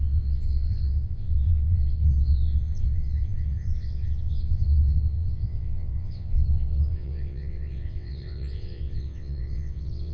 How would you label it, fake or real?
fake